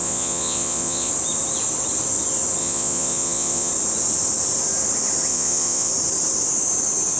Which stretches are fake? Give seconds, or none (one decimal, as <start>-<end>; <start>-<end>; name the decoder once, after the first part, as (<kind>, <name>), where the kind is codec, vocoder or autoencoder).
0.0-1.1 (vocoder, Vocos); 2.6-3.7; 5.3-5.9